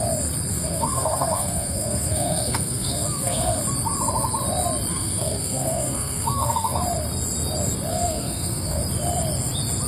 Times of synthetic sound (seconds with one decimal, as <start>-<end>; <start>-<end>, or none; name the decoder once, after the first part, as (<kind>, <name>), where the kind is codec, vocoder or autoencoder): 0.5-3.6 (codec, SNAC); 4.9-6.8; 7.9-8.8